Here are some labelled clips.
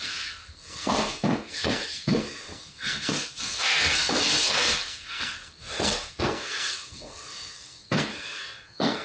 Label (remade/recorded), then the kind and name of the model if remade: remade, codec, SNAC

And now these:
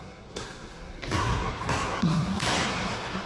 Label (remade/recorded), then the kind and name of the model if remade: remade, codec, SNAC